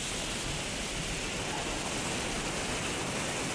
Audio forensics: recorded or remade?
recorded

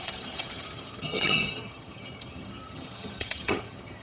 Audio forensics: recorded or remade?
remade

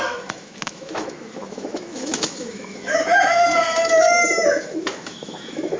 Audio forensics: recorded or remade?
remade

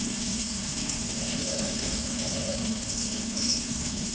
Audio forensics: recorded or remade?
remade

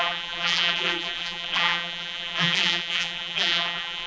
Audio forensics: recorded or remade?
remade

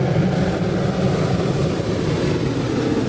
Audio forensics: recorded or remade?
recorded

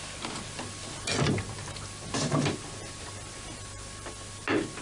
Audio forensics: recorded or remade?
recorded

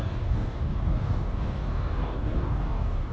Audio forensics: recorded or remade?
remade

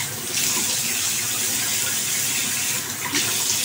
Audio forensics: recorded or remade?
recorded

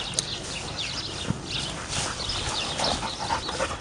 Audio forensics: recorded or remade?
recorded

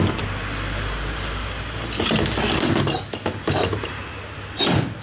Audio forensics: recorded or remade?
recorded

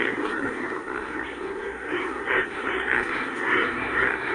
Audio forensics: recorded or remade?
remade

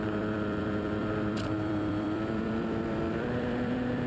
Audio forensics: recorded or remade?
remade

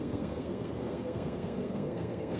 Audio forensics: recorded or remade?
remade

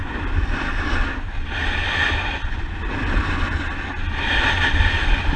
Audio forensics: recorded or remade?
recorded